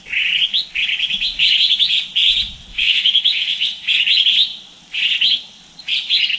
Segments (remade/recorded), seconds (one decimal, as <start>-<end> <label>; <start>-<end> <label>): 0.0-2.7 recorded; 2.7-3.9 remade; 3.9-6.4 recorded